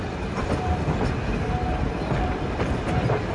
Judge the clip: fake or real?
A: real